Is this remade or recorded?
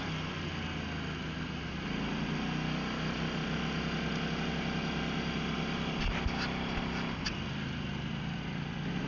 recorded